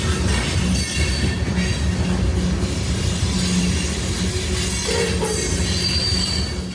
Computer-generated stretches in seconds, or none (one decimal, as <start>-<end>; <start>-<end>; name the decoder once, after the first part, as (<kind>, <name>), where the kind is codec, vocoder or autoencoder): none